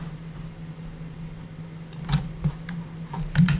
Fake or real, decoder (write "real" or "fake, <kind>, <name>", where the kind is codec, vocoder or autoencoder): real